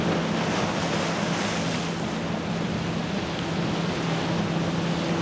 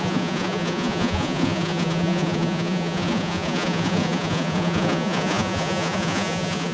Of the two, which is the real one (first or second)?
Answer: first